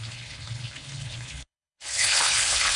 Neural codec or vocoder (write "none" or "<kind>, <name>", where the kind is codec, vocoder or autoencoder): codec, HILCodec